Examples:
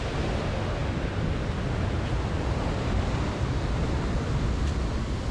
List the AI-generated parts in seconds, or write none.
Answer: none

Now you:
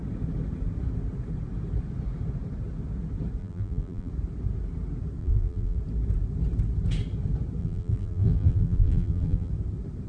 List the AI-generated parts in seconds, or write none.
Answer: 3.4-4.1; 5.2-5.8; 7.6-9.5

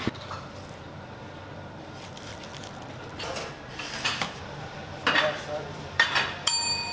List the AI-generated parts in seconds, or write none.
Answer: 0.0-2.5; 3.1-6.9

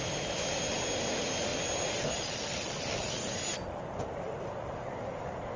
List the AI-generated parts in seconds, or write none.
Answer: none